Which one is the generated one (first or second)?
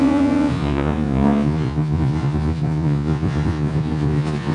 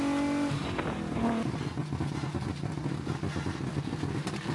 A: first